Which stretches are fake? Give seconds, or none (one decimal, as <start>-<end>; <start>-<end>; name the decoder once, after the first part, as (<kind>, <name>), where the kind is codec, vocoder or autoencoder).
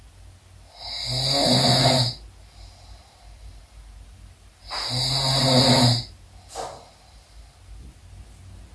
none